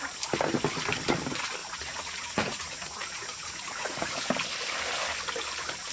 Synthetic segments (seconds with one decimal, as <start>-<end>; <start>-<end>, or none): 1.6-4.2